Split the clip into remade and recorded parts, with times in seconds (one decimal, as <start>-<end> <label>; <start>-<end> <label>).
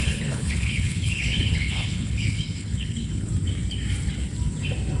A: 0.0-3.3 remade; 3.3-5.0 recorded